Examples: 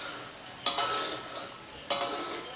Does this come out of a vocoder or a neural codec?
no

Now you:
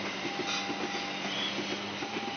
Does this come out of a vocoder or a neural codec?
no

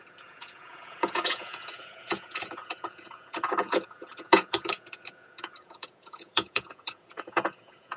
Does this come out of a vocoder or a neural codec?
yes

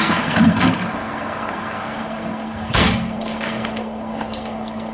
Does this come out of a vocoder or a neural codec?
yes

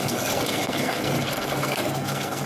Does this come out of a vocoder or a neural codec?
yes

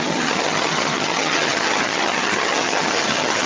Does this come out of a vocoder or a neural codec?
yes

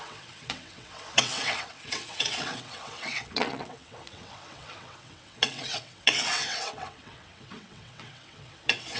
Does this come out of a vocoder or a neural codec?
yes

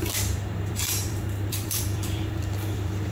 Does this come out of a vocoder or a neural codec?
yes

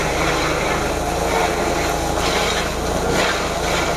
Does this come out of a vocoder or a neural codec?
no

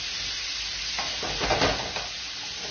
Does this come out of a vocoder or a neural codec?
no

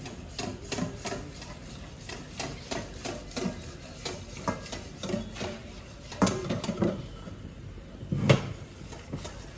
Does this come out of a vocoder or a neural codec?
no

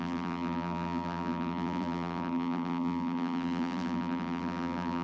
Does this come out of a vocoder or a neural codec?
yes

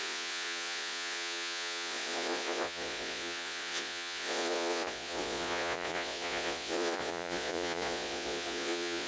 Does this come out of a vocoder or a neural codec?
yes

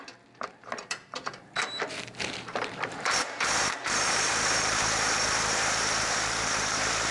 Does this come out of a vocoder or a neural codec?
yes